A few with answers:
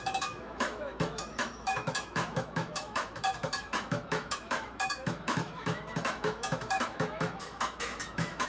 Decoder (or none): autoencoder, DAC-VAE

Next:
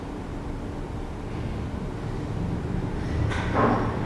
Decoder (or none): none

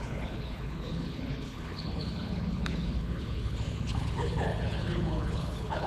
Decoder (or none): codec, HILCodec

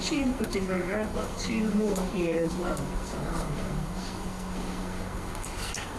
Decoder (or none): codec, SNAC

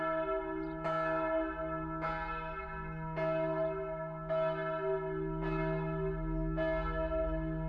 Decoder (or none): none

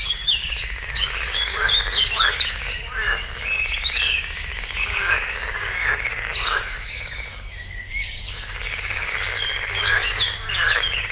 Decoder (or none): codec, DAC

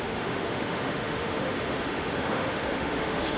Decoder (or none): autoencoder, DAC-VAE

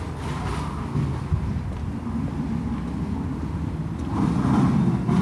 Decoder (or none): none